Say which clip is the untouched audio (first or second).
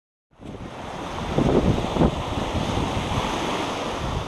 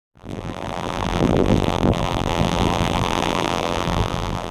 first